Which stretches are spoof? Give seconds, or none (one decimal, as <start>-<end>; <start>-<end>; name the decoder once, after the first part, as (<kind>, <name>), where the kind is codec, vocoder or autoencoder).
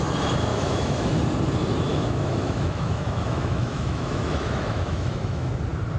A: 0.5-1.1 (autoencoder, DAC-VAE); 1.9-5.5